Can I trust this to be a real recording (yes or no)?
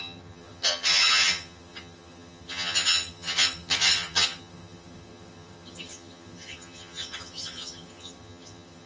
no